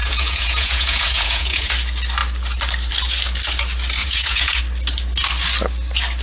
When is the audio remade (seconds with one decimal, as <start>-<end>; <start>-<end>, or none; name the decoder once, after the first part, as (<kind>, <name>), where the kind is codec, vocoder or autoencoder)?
0.0-1.7 (vocoder, Vocos); 4.0-4.6